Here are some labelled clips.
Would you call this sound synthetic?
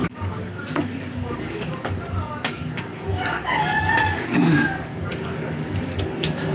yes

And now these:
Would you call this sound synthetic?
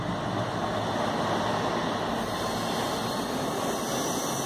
no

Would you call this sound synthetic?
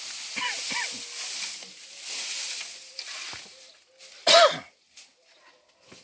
no